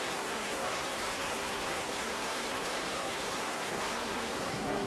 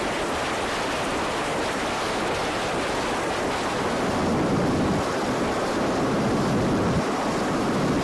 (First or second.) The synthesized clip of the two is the first